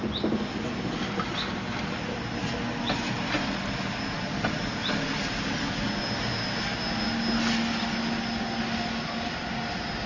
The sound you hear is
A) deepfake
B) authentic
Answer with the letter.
B